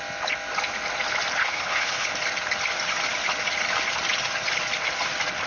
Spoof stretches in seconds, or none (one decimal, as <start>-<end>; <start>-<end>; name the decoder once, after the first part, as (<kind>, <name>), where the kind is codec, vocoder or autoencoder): 1.4-2.1 (codec, HILCodec)

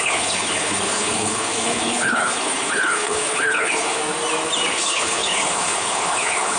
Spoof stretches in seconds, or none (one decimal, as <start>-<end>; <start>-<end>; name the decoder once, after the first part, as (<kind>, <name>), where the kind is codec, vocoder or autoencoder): 0.0-4.0 (codec, HILCodec); 4.7-6.6